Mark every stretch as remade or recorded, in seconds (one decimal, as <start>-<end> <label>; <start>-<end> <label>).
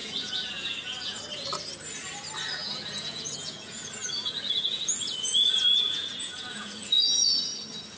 0.0-1.2 remade; 1.2-2.6 recorded; 2.6-7.4 remade; 7.4-8.0 recorded